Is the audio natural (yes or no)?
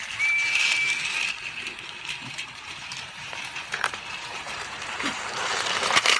no